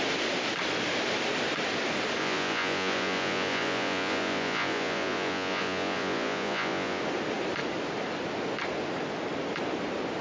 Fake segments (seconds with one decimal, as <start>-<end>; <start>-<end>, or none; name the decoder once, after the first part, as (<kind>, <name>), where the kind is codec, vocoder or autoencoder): 2.2-7.0 (vocoder, Vocos)

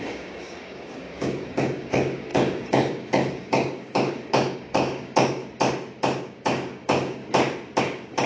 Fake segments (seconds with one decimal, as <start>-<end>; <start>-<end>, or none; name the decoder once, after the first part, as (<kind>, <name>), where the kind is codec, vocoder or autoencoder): 0.0-5.4 (codec, DAC); 6.2-7.2; 7.8-8.3

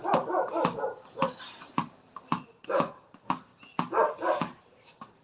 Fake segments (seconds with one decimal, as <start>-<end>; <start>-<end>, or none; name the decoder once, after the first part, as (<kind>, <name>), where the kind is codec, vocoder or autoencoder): 0.0-3.5 (vocoder, BigVGAN v2); 4.6-5.2